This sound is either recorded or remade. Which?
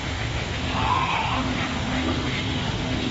remade